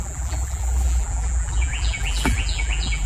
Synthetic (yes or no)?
yes